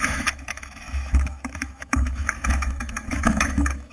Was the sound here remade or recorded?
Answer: remade